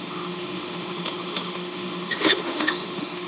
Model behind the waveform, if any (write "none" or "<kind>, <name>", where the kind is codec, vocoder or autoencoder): autoencoder, DAC-VAE